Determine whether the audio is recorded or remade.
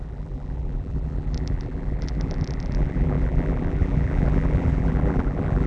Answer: remade